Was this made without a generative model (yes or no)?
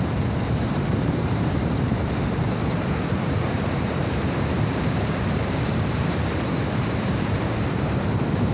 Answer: no